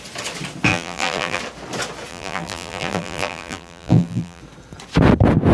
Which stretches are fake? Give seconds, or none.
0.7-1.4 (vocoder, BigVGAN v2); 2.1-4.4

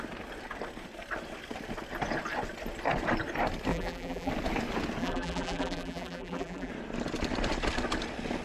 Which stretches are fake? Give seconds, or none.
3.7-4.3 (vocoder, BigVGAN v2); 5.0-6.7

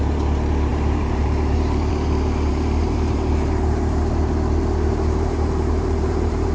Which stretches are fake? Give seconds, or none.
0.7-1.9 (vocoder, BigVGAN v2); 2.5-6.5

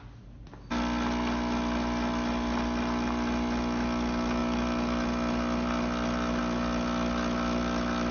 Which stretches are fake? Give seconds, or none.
none